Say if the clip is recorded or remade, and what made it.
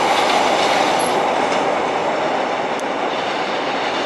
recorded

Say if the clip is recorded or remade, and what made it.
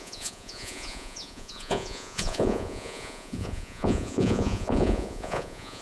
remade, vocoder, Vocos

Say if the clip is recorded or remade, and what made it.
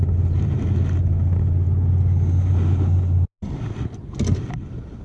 recorded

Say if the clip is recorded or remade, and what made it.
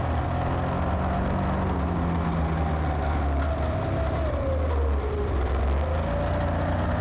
recorded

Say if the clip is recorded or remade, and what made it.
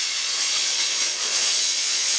remade, vocoder, Vocos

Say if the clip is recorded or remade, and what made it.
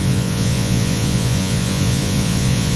remade, vocoder, Vocos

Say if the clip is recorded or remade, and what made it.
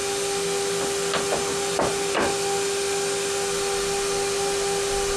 recorded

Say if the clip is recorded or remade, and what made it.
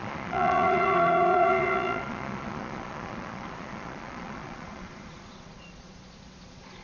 remade, vocoder, Vocos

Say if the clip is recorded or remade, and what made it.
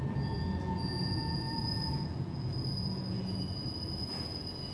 remade, vocoder, Vocos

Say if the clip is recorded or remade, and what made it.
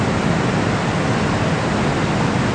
recorded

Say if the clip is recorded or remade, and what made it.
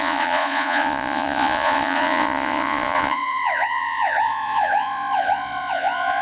remade, vocoder, Vocos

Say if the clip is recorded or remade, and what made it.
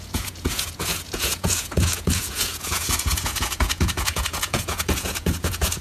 remade, vocoder, Vocos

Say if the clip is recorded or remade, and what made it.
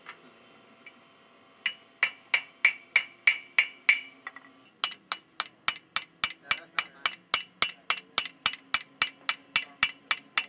recorded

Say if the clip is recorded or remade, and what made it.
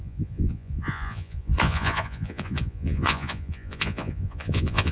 remade, vocoder, Vocos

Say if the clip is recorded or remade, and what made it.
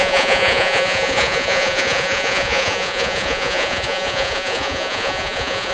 remade, vocoder, Vocos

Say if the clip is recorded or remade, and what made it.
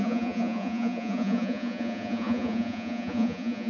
remade, vocoder, Vocos